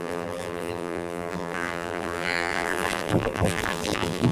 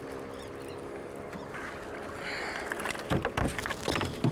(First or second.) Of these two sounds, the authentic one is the second